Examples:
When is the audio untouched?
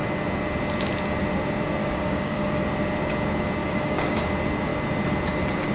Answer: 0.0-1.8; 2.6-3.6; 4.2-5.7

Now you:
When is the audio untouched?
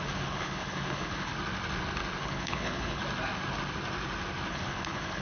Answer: 1.3-2.2; 3.0-4.5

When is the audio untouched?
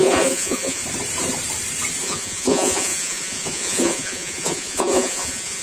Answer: 0.8-2.0